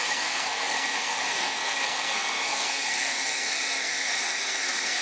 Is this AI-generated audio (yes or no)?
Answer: yes